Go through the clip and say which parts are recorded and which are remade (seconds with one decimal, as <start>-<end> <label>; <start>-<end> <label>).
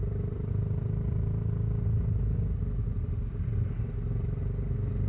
0.0-0.5 remade; 0.5-5.1 recorded